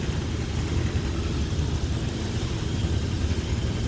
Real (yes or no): yes